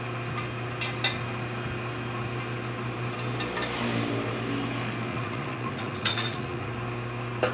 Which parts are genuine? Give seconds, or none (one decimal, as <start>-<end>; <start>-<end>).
0.0-5.1; 6.7-7.5